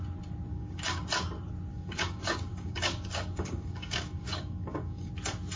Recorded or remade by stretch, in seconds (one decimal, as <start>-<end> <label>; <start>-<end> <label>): 0.0-0.5 recorded; 0.5-1.1 remade; 1.1-1.7 recorded; 1.7-5.1 remade; 5.1-5.6 recorded